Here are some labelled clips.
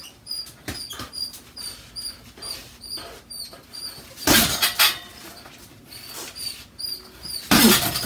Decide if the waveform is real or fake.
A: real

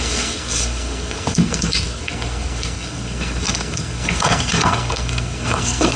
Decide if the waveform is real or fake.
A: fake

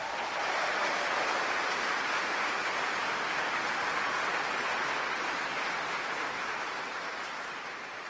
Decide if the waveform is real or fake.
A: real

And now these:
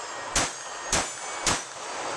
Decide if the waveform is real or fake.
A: real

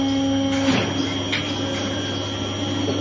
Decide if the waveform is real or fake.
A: real